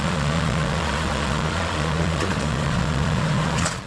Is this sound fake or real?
fake